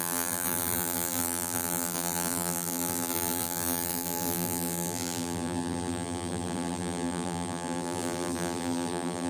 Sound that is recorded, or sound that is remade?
remade